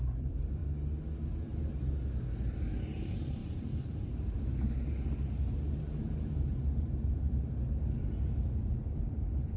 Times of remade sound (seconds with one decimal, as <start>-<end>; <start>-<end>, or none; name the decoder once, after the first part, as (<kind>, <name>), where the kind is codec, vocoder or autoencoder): 0.0-0.6 (vocoder, BigVGAN v2); 1.4-9.6